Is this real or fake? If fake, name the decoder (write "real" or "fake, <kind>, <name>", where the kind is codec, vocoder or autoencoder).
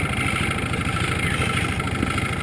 real